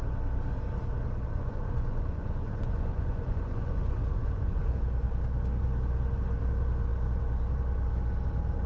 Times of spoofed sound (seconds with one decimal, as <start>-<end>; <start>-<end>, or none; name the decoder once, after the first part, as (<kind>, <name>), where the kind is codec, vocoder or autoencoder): 1.3-4.7 (vocoder, Vocos)